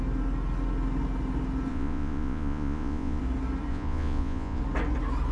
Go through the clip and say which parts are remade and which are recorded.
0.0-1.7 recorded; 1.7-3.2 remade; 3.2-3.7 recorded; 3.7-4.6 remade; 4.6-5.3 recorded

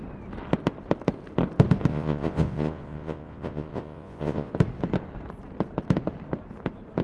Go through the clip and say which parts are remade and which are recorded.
0.0-1.9 recorded; 1.9-4.5 remade; 4.5-7.0 recorded

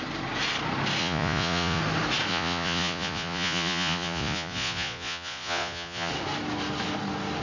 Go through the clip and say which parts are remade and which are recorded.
0.0-1.0 recorded; 1.0-1.8 remade; 1.8-2.3 recorded; 2.3-6.1 remade; 6.1-7.4 recorded

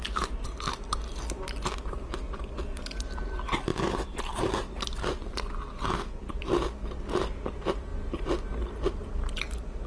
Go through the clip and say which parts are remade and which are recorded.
0.0-9.9 recorded

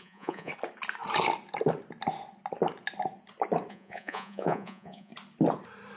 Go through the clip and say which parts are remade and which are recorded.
0.0-0.5 remade; 0.5-3.7 recorded; 3.7-5.1 remade; 5.1-6.0 recorded